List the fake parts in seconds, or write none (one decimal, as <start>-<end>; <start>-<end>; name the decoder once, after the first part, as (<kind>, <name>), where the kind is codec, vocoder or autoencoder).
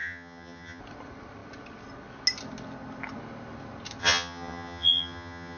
0.0-0.8 (vocoder, HiFi-GAN); 4.0-5.6